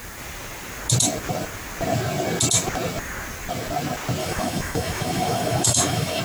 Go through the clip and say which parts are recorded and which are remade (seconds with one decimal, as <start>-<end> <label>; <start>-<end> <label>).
0.0-4.2 recorded; 4.2-6.2 remade